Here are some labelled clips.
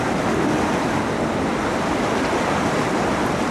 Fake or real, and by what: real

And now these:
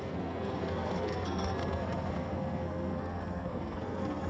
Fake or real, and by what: fake, codec, SNAC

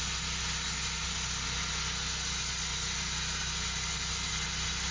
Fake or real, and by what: real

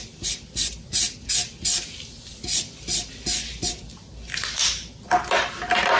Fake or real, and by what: real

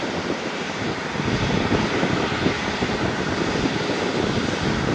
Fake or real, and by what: real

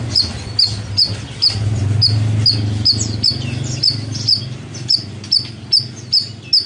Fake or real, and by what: real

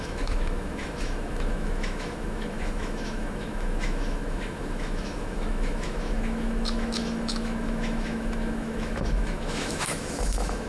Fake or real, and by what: fake, autoencoder, DAC-VAE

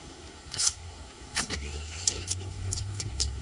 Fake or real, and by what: fake, codec, SNAC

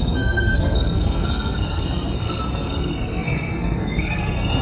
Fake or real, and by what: fake, codec, SNAC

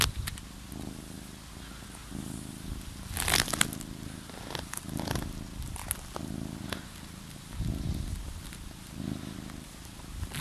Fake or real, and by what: real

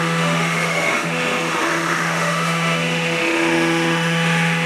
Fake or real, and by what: fake, autoencoder, DAC-VAE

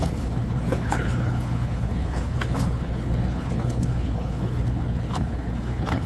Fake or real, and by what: fake, codec, HILCodec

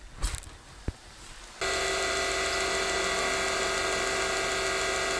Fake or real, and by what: real